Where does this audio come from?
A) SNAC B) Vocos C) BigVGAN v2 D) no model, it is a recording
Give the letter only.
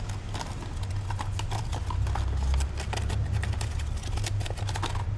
D